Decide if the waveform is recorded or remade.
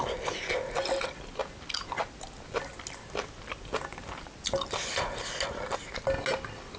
recorded